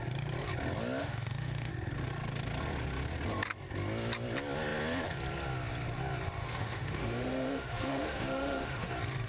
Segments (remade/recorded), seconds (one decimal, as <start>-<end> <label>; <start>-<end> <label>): 0.0-1.0 recorded; 1.0-1.7 remade; 1.7-6.4 recorded; 6.4-8.9 remade; 8.9-9.3 recorded